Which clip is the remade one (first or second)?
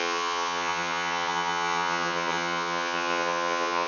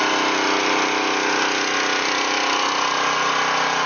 first